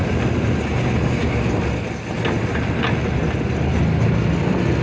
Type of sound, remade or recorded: recorded